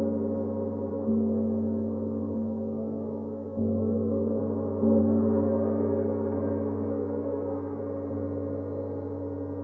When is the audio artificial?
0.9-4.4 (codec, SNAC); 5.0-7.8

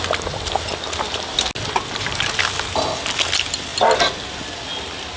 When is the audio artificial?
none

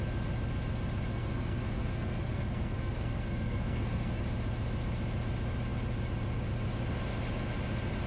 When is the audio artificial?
1.1-4.2 (codec, SNAC)

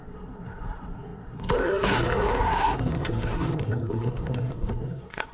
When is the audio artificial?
0.0-5.3 (codec, SNAC)